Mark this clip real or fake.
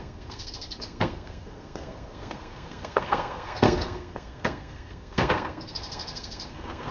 fake